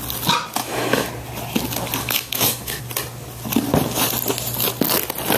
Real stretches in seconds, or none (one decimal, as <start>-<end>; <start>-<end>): 0.0-0.6; 1.1-2.0; 2.8-5.4